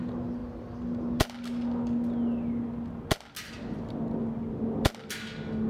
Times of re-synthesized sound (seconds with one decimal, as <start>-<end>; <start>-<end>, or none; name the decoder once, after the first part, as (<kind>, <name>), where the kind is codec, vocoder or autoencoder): none

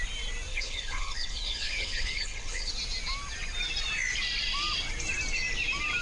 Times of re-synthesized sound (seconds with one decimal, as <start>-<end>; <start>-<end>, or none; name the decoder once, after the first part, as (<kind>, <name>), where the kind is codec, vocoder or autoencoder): 0.5-2.7 (codec, HILCodec)